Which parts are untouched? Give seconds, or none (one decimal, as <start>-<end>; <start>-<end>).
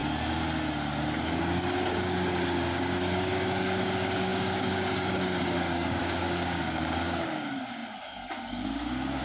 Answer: 0.0-1.2